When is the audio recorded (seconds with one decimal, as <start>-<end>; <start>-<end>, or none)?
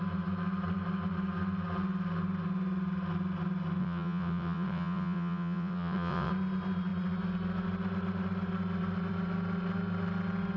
0.0-3.8; 6.3-10.6